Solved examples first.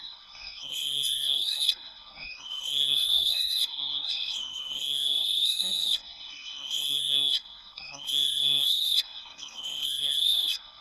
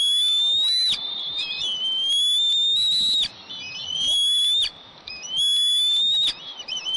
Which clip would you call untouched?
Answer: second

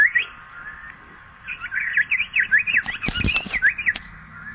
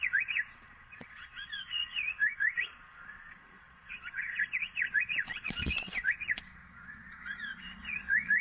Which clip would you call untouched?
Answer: first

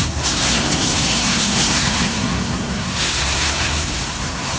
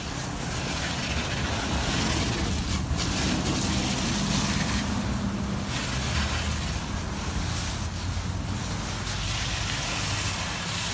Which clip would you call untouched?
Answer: second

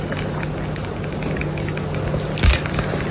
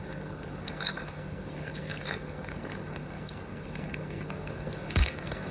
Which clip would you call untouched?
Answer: first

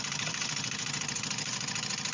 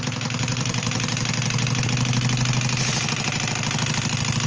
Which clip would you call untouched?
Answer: second